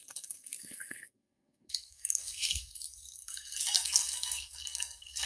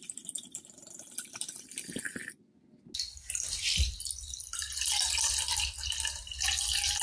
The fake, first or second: first